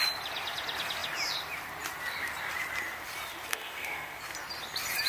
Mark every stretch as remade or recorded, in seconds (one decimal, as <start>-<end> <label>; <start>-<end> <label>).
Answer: 0.0-3.5 recorded; 3.5-4.2 remade; 4.2-5.1 recorded